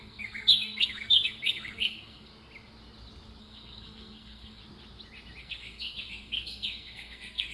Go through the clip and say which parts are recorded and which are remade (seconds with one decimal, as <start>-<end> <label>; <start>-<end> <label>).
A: 0.0-2.3 remade; 2.3-3.4 recorded; 3.4-4.6 remade; 4.6-5.4 recorded; 5.4-7.5 remade